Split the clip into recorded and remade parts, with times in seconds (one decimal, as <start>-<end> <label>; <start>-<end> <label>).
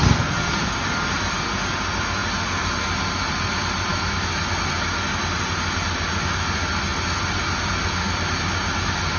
0.0-3.9 recorded; 3.9-4.4 remade; 4.4-9.2 recorded